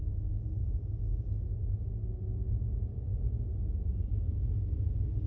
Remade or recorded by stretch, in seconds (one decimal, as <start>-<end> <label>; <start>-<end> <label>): 0.0-5.3 recorded